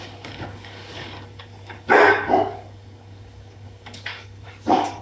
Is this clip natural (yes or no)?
no